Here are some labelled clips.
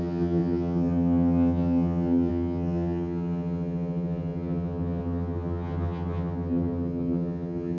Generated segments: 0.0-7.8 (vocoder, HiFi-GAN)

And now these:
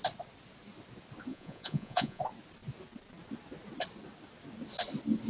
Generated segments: 1.3-2.2 (vocoder, Vocos)

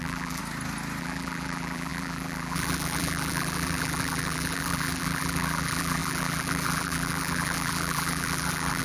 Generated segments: 0.0-0.4 (vocoder, BigVGAN v2); 1.0-8.8

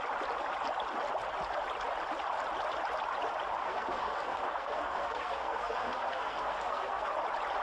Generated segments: 3.6-7.1 (codec, SNAC)

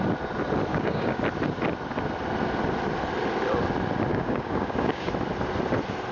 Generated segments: 0.7-1.2 (codec, DAC); 4.1-5.1